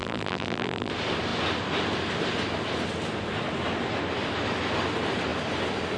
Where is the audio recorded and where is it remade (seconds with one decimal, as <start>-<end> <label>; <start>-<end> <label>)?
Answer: 0.0-0.9 remade; 0.9-6.0 recorded